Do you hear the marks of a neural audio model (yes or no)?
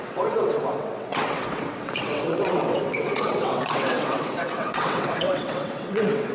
yes